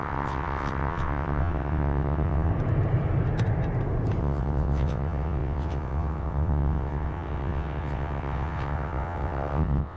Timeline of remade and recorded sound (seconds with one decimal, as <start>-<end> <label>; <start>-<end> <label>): 0.0-2.5 remade; 2.5-4.2 recorded; 4.2-10.0 remade